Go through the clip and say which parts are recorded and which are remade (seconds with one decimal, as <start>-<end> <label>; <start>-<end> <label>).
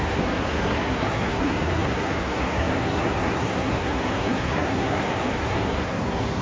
0.0-6.4 remade